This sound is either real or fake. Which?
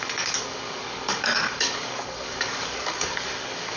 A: fake